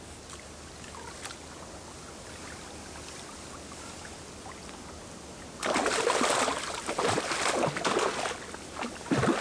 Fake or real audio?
real